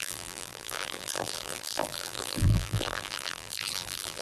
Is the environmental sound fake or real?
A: fake